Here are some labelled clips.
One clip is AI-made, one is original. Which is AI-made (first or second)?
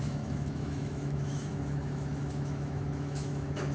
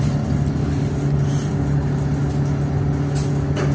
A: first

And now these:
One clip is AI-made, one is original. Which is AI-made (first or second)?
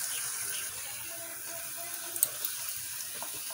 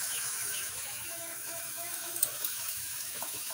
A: second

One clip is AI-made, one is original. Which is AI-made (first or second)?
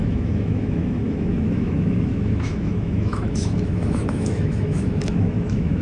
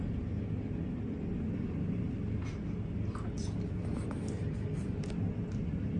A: first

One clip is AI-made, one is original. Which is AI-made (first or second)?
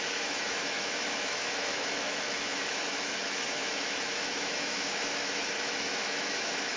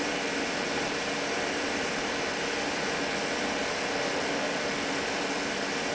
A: first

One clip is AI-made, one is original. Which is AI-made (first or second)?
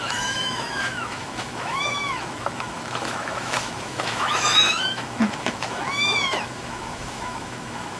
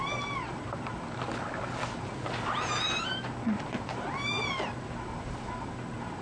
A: first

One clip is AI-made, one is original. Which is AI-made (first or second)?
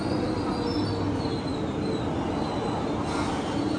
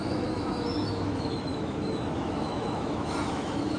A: second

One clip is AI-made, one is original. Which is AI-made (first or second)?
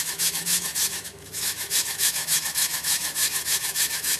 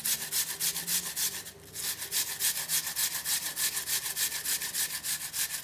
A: first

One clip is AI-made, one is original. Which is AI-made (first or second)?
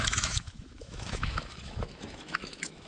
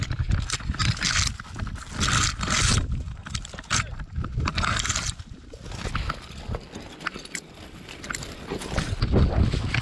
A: first